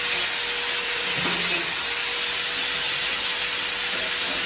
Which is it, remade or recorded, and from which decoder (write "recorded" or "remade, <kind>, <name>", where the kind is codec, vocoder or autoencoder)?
recorded